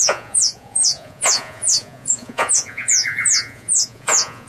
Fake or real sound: fake